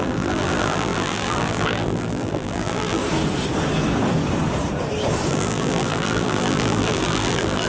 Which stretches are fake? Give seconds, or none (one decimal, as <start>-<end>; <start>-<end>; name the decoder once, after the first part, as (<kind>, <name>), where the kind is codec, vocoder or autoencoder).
0.0-3.0 (vocoder, BigVGAN v2); 5.3-7.7